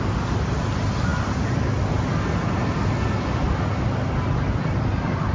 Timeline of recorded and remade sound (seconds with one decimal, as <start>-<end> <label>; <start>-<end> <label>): 0.0-5.3 recorded